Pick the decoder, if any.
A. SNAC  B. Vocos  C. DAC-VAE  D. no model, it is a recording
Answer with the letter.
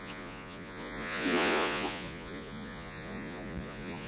B